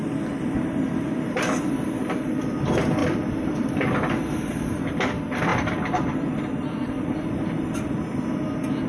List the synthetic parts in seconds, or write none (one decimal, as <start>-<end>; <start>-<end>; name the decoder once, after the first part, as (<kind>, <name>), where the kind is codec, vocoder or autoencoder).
3.0-4.5 (vocoder, BigVGAN v2); 5.5-7.9